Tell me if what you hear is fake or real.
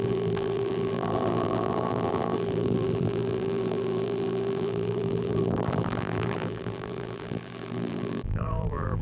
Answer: fake